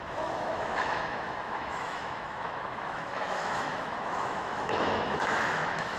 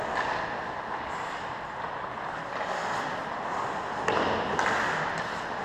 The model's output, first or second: first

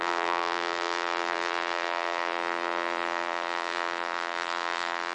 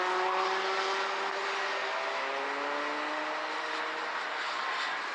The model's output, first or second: first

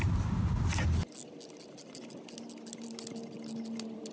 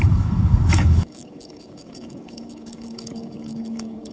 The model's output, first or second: second